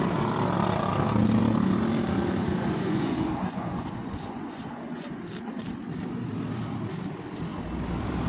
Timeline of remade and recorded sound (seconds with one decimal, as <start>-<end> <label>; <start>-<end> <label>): 0.0-2.5 recorded; 2.5-5.2 remade; 5.2-8.3 recorded